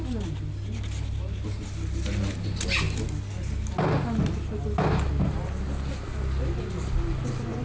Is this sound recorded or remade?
recorded